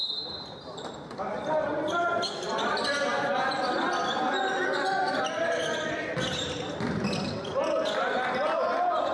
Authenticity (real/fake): real